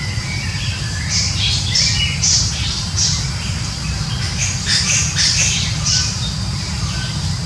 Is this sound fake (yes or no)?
no